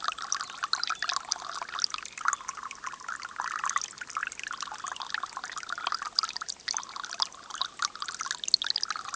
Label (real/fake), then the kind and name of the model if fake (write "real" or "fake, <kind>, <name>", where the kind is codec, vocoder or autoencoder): real